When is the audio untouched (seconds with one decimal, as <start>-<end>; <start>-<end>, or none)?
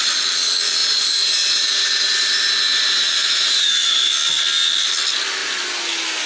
0.0-0.8; 4.1-6.3